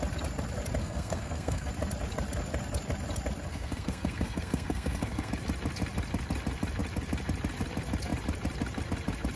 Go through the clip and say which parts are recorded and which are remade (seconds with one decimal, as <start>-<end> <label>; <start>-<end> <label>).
0.0-0.8 recorded; 0.8-1.7 remade; 1.7-3.5 recorded; 3.5-5.3 remade; 5.3-9.4 recorded